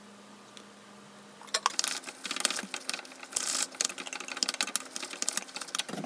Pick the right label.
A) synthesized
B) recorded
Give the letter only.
B